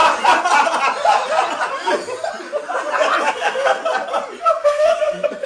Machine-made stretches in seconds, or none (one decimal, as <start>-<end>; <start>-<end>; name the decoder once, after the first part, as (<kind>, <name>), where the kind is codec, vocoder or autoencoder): 3.3-3.8 (codec, SNAC); 4.4-5.5